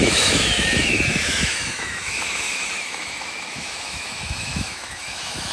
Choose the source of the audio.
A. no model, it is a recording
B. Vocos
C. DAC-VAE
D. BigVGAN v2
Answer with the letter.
C